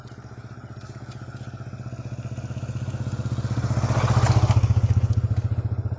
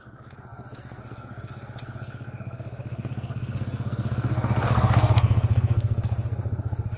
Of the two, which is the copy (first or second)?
second